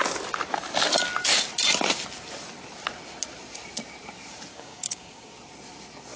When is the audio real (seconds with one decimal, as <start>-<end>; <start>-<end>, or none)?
0.0-4.5; 5.3-6.2